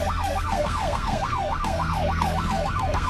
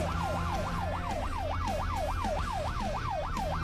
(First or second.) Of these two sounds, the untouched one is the second